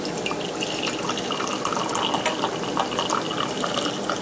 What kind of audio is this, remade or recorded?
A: recorded